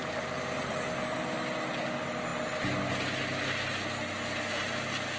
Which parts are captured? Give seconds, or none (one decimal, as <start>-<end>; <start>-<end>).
0.0-5.2